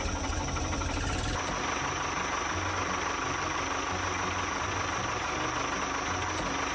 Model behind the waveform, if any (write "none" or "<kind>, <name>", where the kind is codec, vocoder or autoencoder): none